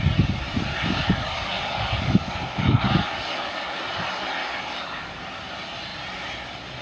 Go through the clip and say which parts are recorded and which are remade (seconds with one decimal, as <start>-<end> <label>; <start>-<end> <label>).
0.0-0.7 recorded; 0.7-3.8 remade; 3.8-4.4 recorded; 4.4-5.2 remade; 5.2-6.8 recorded